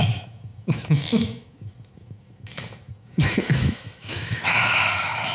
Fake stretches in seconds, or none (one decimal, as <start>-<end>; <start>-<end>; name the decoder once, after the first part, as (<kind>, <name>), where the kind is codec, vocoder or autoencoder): 0.0-5.3 (autoencoder, DAC-VAE)